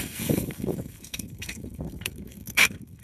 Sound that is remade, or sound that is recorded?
remade